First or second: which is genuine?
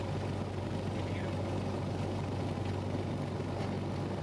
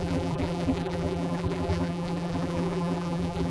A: first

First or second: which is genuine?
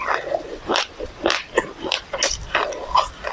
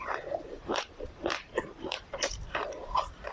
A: first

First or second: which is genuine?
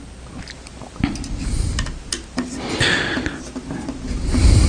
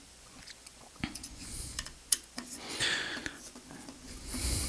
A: first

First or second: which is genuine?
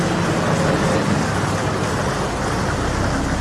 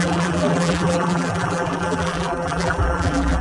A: first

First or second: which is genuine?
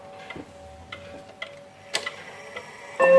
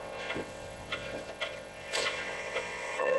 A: first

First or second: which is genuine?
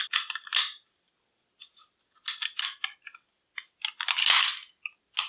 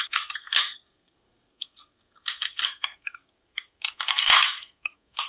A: first